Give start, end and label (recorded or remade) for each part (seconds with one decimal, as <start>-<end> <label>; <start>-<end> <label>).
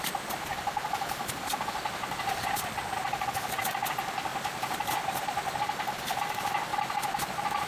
0.0-7.7 recorded